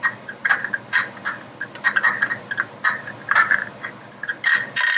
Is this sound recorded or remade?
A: recorded